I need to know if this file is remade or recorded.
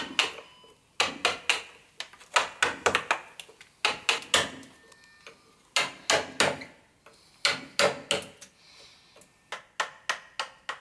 recorded